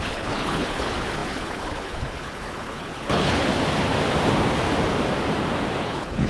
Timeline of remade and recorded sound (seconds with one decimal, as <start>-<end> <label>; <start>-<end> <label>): 0.0-3.5 remade; 3.5-5.8 recorded; 5.8-6.3 remade